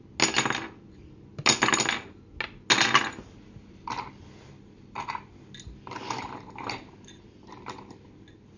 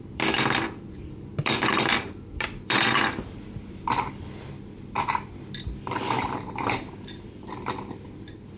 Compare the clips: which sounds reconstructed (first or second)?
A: second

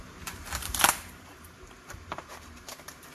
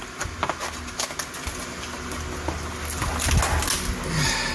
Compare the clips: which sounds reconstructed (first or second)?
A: first